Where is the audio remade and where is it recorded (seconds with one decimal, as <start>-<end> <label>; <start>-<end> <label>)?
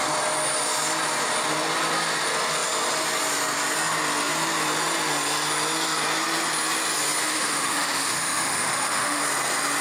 0.0-7.2 recorded; 7.2-9.2 remade; 9.2-9.8 recorded